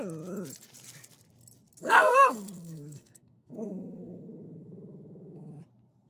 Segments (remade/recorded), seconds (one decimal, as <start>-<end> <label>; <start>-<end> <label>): 0.0-1.8 recorded; 1.8-5.5 remade; 5.5-6.1 recorded